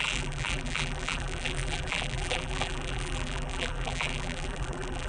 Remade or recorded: remade